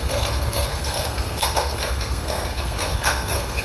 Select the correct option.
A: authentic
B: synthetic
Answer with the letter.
B